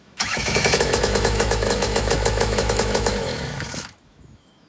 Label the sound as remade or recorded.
remade